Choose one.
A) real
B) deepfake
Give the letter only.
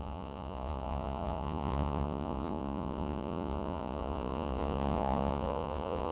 B